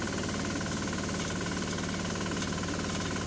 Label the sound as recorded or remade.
recorded